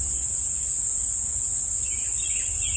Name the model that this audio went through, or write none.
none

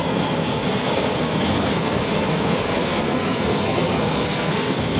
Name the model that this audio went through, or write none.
codec, SNAC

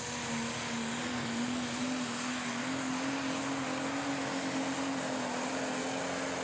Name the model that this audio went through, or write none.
none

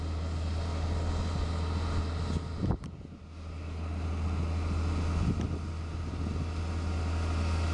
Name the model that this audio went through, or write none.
none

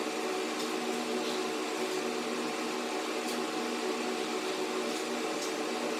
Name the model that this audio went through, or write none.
none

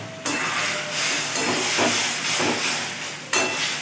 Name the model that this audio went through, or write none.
none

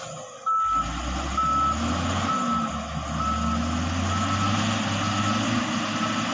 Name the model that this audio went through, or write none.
none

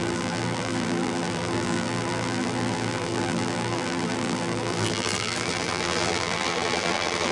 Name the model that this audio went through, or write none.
vocoder, BigVGAN v2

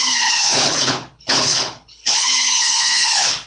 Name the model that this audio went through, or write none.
codec, HILCodec